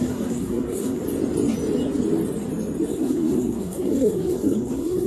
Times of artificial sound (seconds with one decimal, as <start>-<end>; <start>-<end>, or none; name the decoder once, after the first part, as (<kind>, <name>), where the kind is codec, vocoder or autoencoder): 0.0-1.0 (codec, SNAC); 2.9-5.1